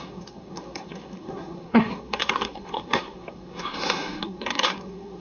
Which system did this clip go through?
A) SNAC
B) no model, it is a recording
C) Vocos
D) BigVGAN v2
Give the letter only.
A